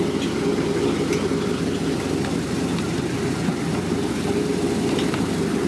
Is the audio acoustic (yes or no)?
yes